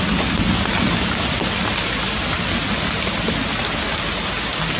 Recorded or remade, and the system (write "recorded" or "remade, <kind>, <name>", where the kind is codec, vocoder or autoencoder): recorded